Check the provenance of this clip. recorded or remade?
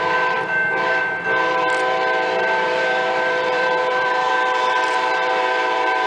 remade